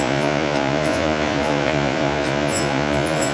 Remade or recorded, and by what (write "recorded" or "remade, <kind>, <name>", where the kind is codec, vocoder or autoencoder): remade, vocoder, Vocos